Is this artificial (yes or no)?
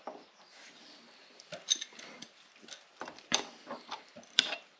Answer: yes